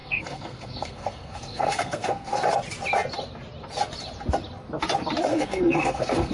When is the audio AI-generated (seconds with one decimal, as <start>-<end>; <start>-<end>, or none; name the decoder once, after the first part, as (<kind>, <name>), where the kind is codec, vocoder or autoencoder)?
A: 0.0-2.4 (codec, SNAC); 5.3-6.3